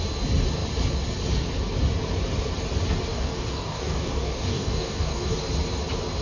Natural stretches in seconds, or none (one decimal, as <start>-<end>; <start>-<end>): 0.0-3.1; 5.4-6.2

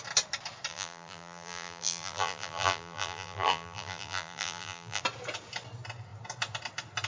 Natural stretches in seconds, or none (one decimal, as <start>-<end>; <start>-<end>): 0.0-0.7; 5.0-7.1

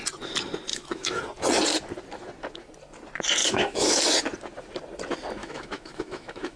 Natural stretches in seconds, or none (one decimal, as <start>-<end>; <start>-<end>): 0.0-0.7; 1.2-3.4; 4.0-5.4

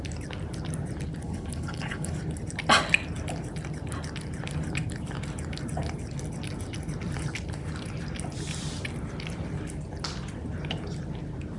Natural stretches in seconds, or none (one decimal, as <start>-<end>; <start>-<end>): 0.0-1.2; 2.1-11.6

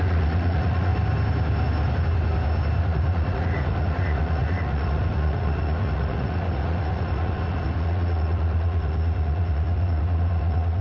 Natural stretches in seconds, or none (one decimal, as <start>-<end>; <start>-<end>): 0.9-2.8

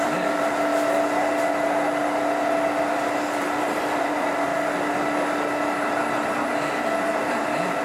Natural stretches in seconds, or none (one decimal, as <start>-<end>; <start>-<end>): 0.7-3.4; 4.5-7.0

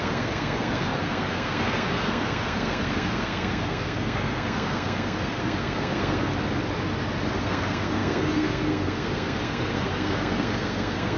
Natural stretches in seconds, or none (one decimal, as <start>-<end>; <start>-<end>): 6.3-7.4

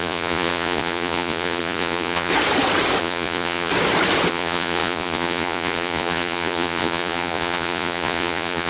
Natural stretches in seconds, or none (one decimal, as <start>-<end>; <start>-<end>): 2.3-3.0; 3.7-4.3